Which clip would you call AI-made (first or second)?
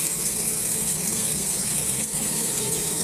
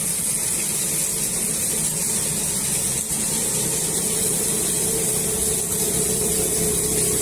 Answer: first